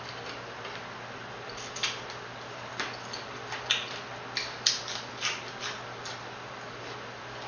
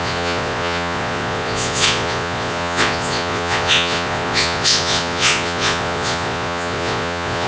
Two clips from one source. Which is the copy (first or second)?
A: second